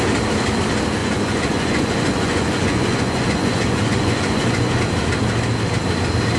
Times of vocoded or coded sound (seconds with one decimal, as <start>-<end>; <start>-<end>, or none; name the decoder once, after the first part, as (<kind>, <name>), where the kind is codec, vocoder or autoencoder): 1.0-4.8 (vocoder, Vocos)